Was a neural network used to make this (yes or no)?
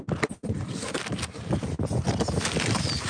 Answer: no